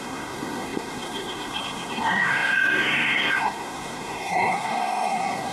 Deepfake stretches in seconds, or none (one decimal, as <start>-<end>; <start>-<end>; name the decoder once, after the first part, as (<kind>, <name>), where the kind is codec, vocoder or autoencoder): 0.0-5.5 (codec, SNAC)